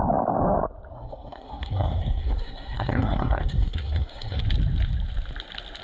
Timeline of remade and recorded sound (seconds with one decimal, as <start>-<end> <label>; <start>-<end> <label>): 0.0-0.9 recorded; 0.9-4.4 remade; 4.4-5.8 recorded